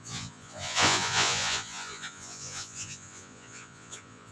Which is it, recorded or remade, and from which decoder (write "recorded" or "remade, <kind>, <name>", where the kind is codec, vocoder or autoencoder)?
remade, vocoder, Vocos